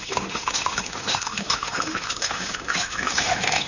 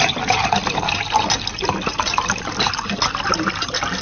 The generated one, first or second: first